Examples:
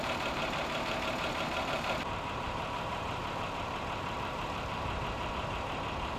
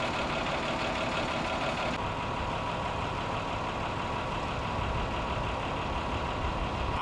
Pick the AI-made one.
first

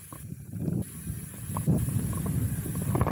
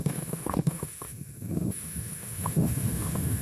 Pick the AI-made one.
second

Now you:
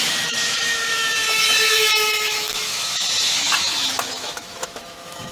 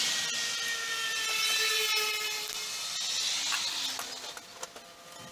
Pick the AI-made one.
first